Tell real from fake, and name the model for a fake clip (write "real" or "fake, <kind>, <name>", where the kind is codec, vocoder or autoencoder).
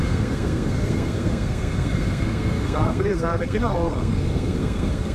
fake, codec, SNAC